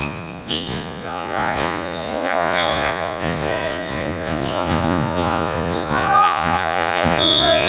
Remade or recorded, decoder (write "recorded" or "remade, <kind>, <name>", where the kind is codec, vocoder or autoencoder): remade, vocoder, Vocos